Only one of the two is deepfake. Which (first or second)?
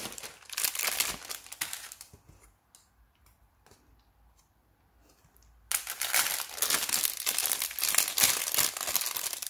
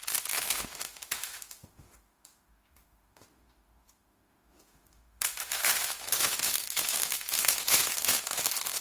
second